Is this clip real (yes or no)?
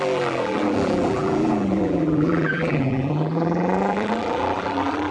no